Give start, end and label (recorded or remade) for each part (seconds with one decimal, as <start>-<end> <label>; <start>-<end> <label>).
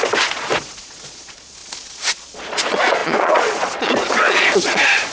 0.0-5.1 remade